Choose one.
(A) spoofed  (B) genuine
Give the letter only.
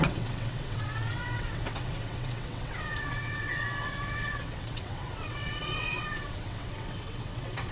A